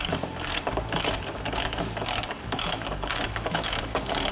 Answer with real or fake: fake